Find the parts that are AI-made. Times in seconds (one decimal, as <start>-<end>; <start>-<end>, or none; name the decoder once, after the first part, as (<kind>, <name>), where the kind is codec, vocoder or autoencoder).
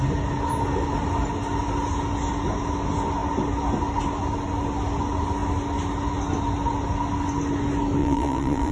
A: 8.0-8.7 (vocoder, Vocos)